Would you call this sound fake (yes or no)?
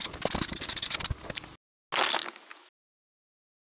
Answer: no